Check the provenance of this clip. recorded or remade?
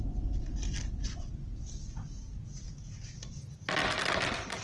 recorded